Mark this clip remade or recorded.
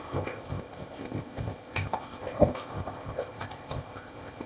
remade